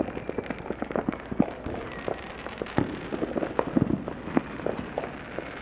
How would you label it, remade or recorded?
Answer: recorded